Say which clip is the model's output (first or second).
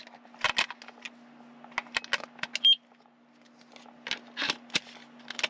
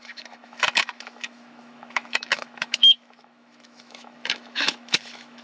second